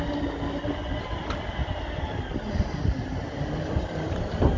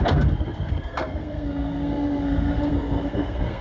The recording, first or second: first